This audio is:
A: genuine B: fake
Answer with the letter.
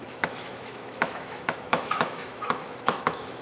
B